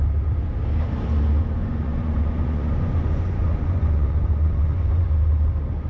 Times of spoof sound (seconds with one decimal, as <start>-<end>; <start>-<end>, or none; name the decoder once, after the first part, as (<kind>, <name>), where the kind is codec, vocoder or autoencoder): 1.6-5.1 (vocoder, Vocos)